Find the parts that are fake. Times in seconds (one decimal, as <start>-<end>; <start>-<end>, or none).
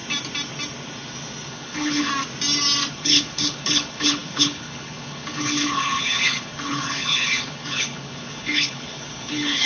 1.5-2.1; 2.9-9.7